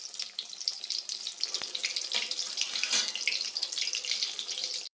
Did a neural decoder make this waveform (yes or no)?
yes